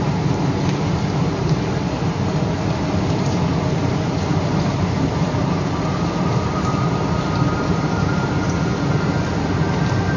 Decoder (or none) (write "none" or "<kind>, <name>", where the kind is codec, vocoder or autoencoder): vocoder, BigVGAN v2